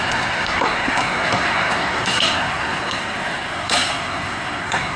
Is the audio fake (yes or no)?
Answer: yes